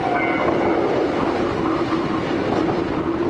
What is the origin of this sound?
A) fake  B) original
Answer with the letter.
B